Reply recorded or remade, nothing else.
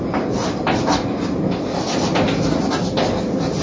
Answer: recorded